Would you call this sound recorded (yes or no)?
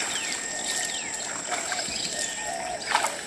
yes